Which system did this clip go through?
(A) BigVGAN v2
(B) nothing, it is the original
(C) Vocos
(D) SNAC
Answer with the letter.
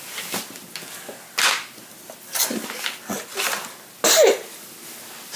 B